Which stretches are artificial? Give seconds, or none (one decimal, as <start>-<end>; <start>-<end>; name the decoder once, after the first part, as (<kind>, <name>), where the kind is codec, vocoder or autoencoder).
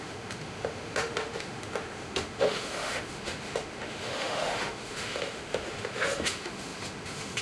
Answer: 0.0-7.4 (autoencoder, DAC-VAE)